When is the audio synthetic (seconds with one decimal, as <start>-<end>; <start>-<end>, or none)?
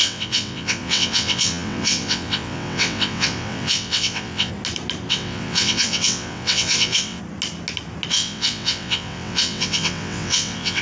0.0-4.5; 5.1-7.2; 8.1-10.8